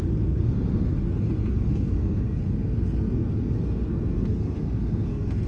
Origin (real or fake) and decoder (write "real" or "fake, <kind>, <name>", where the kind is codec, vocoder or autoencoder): fake, codec, SNAC